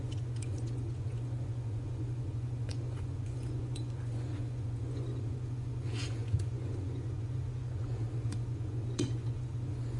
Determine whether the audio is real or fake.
fake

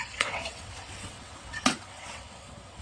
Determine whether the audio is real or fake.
fake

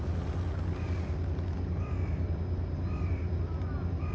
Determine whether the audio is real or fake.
real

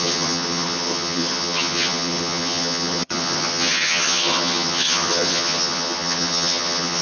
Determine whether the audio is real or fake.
fake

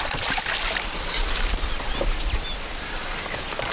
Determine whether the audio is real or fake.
real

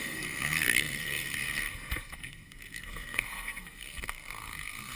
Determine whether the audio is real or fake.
fake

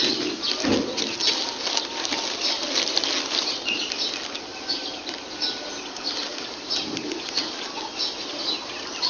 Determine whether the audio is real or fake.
real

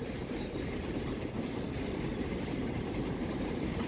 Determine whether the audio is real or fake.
fake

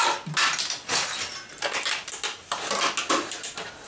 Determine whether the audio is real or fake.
real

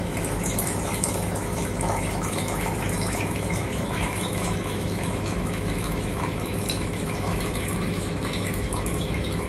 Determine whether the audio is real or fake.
fake